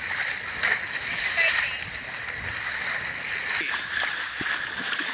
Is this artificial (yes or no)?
no